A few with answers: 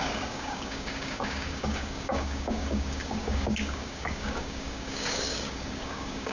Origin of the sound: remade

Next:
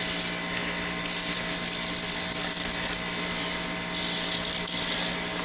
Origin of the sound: recorded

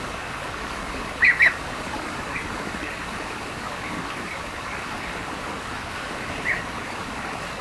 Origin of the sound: remade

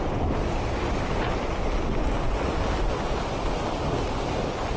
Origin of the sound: recorded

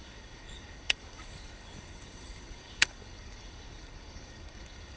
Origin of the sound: remade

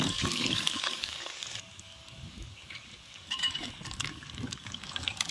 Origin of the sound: remade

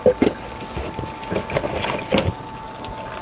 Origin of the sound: recorded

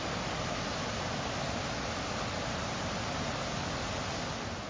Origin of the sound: recorded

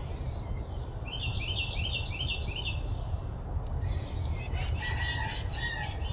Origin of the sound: recorded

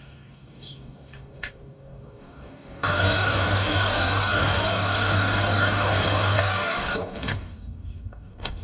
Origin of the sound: remade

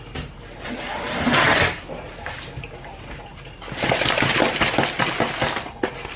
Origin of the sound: recorded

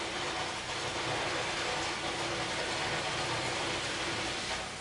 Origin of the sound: recorded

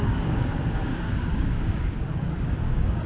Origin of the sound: remade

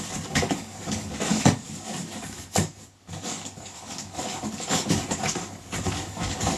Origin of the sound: remade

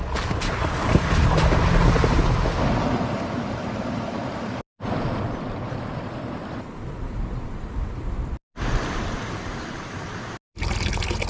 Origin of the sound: recorded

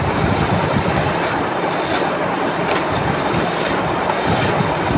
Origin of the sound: recorded